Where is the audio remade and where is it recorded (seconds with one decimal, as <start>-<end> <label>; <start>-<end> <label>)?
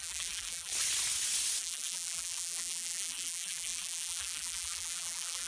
0.0-0.7 remade; 0.7-1.6 recorded; 1.6-5.5 remade